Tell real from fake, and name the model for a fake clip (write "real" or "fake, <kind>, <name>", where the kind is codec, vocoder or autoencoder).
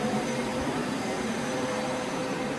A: fake, vocoder, BigVGAN v2